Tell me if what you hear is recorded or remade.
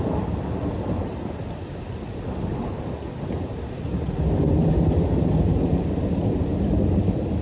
recorded